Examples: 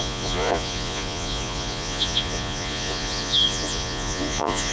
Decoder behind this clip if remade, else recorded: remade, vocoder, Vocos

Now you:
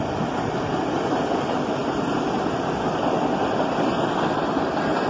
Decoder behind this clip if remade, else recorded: recorded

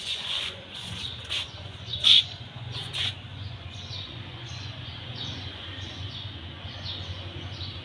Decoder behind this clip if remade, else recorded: remade, vocoder, Vocos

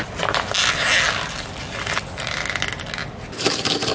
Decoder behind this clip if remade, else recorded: recorded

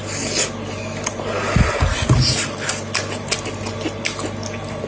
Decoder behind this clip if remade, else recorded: recorded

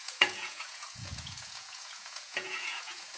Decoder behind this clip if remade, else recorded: remade, vocoder, Vocos